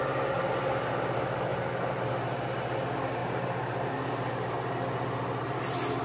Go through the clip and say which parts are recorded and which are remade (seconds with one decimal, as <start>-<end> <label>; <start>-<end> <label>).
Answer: 0.0-1.5 recorded; 1.5-2.0 remade; 2.0-3.2 recorded; 3.2-3.9 remade; 3.9-6.0 recorded